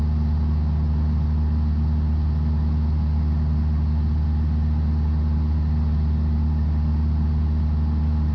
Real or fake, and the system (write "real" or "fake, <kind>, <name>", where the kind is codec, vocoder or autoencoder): real